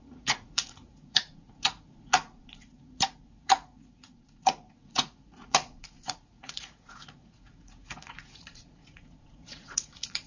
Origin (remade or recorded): remade